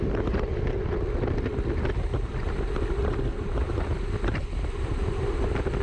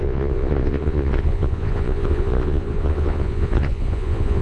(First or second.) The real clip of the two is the first